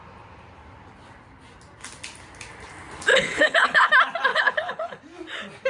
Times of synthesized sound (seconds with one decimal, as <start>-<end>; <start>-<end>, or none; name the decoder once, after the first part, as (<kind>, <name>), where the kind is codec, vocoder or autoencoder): 3.1-3.9 (codec, HILCodec); 4.3-5.0

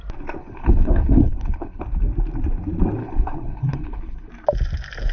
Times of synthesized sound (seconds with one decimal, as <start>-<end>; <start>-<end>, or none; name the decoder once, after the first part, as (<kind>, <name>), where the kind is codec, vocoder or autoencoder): 0.4-1.8 (codec, HILCodec); 3.0-4.3

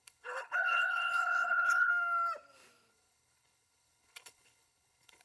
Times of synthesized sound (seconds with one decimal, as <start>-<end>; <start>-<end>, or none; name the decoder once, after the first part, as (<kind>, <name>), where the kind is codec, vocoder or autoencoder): 0.0-1.9 (codec, HILCodec); 2.9-5.2

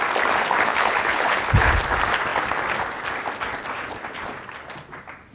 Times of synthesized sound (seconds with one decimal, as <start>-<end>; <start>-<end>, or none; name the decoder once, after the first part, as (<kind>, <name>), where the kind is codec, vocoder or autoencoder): 0.7-1.8 (codec, HILCodec)

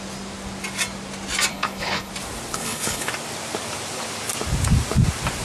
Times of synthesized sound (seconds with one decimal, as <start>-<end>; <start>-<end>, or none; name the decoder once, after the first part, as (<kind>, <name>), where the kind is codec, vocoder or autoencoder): 1.5-2.1 (codec, HILCodec); 2.5-3.1

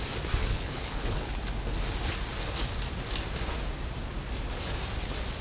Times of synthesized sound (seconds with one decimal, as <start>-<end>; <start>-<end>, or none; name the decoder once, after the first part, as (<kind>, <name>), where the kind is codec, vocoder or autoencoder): 0.4-1.4 (codec, HILCodec)